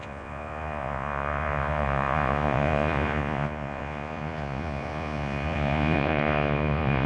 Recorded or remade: remade